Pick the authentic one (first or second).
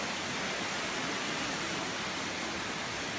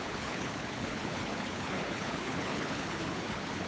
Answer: first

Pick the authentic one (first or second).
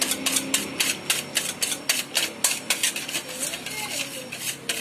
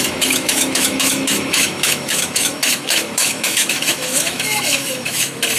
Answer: first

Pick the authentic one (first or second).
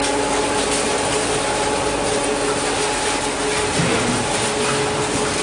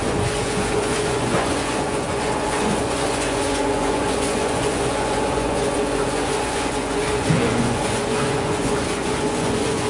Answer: first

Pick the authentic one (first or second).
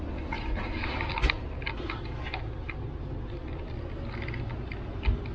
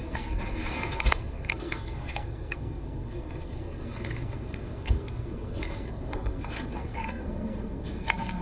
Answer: first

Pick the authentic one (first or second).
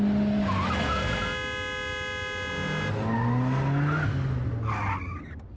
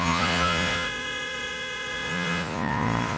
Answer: first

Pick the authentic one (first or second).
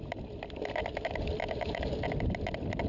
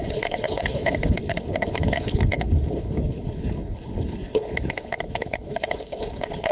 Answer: first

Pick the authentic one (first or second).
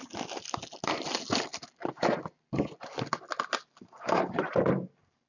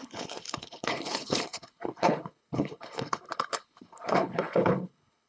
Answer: first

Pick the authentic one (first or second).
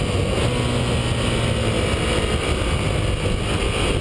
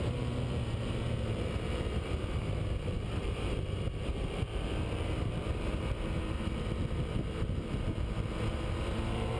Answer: first